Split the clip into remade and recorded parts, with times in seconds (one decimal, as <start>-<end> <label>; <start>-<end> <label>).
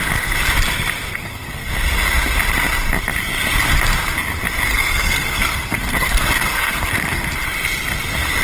0.0-1.1 recorded; 1.1-1.7 remade; 1.7-4.7 recorded; 4.7-7.3 remade; 7.3-8.4 recorded